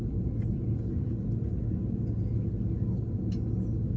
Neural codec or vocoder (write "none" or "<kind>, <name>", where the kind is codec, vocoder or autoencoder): none